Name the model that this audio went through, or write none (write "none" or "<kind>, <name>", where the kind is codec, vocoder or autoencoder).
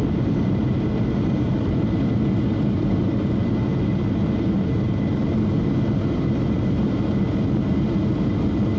none